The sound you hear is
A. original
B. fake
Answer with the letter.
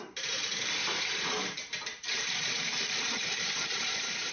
B